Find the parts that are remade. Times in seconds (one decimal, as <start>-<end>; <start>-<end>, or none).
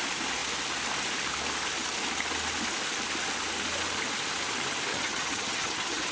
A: 4.9-6.1